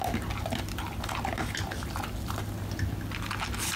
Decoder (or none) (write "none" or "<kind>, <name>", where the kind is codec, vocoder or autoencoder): none